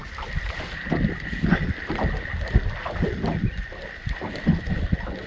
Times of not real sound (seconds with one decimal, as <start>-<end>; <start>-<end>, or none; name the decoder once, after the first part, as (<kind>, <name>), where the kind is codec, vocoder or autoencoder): none